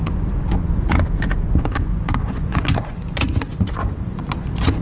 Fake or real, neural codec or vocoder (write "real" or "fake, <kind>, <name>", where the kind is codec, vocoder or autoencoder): fake, vocoder, Vocos